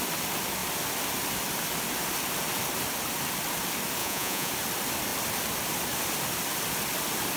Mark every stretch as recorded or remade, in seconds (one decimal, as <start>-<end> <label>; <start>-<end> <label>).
0.0-4.0 recorded; 4.0-4.5 remade; 4.5-7.4 recorded